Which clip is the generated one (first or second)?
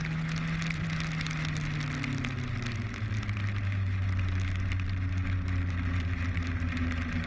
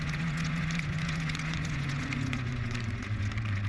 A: second